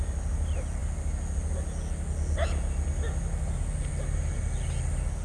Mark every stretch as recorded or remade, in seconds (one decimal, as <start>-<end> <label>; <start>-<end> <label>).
0.0-5.2 recorded